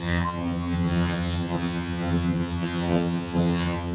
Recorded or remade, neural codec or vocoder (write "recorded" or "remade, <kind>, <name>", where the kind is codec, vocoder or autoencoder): remade, vocoder, HiFi-GAN